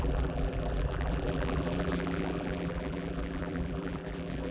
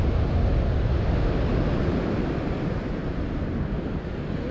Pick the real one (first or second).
second